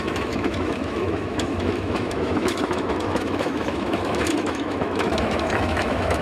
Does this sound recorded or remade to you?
remade